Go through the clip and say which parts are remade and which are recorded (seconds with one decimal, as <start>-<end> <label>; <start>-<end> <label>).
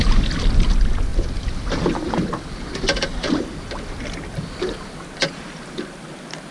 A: 0.0-1.1 recorded; 1.1-3.6 remade; 3.6-6.5 recorded